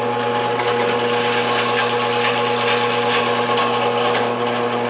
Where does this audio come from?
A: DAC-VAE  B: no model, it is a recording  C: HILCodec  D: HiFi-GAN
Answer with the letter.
B